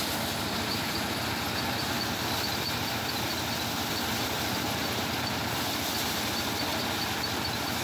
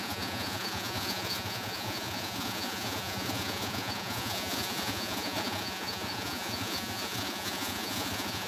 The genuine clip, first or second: first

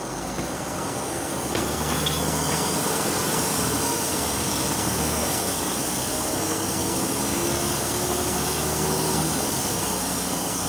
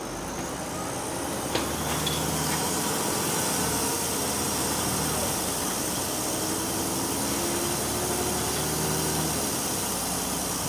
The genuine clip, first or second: second